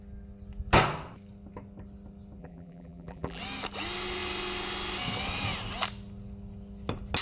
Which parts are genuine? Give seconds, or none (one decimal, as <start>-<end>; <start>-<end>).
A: 0.0-2.4; 3.4-7.2